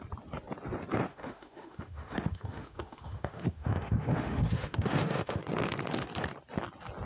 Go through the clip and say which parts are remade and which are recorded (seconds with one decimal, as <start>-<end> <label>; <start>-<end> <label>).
0.0-1.1 recorded; 1.1-5.4 remade; 5.4-7.1 recorded